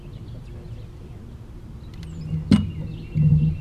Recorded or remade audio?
recorded